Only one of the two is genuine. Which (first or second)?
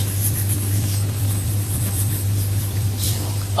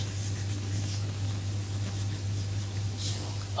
second